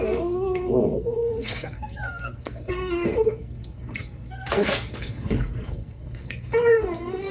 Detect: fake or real fake